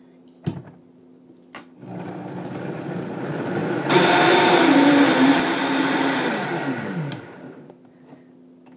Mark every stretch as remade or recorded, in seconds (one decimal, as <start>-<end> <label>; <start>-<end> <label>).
0.0-3.6 recorded; 3.6-7.7 remade; 7.7-8.8 recorded